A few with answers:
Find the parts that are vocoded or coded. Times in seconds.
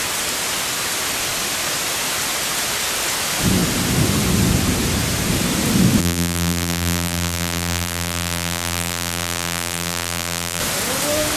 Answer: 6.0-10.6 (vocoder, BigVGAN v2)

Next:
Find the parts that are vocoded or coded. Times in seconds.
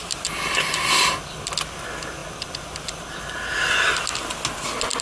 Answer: 0.0-0.7 (vocoder, BigVGAN v2); 2.2-3.2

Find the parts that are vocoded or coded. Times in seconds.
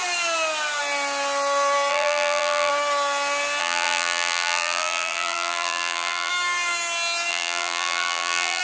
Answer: 1.9-2.7 (vocoder, BigVGAN v2); 3.6-6.3; 7.3-8.6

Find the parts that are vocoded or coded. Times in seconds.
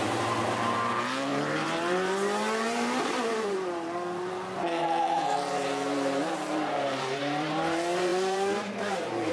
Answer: 0.0-9.3 (vocoder, BigVGAN v2)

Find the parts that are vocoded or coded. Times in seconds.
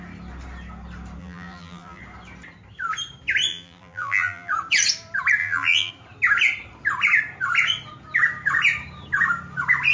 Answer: 1.2-2.0 (vocoder, BigVGAN v2); 3.5-4.5; 5.4-5.9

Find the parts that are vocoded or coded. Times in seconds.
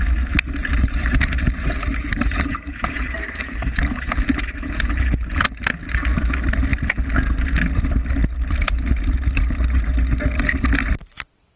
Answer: 0.6-4.3 (vocoder, BigVGAN v2)